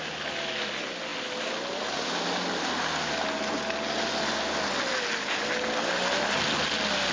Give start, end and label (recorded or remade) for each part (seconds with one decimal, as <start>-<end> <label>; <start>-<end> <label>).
0.0-7.1 recorded